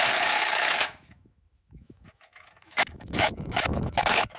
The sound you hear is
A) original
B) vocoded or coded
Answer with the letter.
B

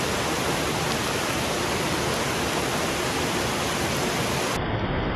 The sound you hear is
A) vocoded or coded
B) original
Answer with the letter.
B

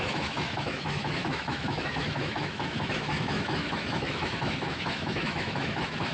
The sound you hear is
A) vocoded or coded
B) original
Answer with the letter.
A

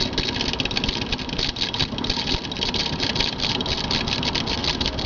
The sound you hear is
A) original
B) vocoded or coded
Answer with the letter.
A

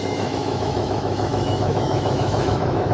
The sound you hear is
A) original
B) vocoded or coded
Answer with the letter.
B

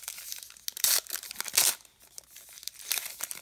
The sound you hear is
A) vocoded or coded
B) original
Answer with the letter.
B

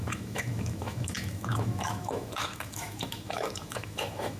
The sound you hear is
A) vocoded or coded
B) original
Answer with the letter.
A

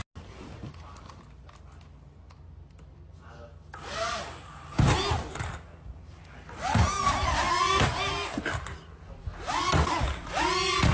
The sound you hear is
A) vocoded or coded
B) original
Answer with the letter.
B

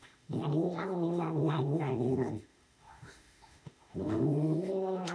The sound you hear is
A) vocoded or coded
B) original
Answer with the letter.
A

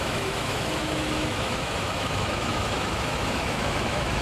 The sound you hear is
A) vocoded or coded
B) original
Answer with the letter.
A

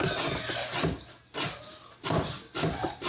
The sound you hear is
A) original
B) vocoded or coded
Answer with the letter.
A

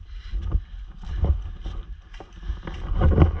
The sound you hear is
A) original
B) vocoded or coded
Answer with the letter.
A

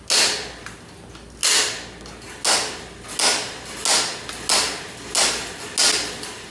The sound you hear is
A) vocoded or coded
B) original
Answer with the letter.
B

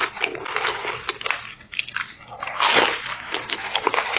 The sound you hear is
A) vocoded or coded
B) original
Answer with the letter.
B